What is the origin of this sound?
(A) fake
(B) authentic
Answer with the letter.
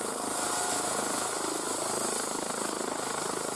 B